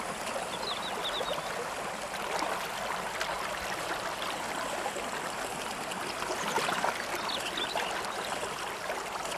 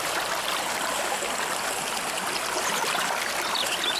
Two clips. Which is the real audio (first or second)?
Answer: first